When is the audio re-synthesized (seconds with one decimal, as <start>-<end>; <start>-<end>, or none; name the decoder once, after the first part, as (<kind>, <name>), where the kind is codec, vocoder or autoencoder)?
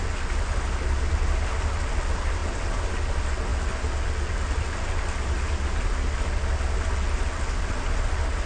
none